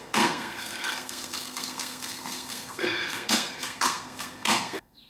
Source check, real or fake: fake